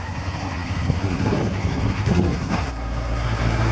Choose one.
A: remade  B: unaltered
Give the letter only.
A